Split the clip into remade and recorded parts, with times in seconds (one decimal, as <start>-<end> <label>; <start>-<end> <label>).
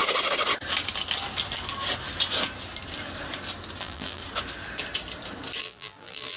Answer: 0.0-3.8 recorded; 3.8-4.2 remade; 4.2-5.6 recorded; 5.6-6.4 remade